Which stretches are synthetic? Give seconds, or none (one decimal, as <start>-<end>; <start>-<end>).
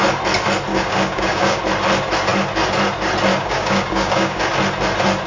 0.7-1.6; 3.3-4.4